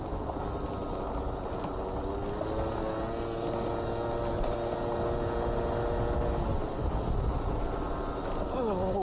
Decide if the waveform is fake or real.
real